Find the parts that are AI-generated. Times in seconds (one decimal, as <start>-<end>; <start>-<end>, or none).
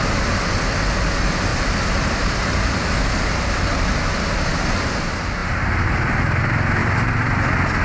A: 1.5-3.6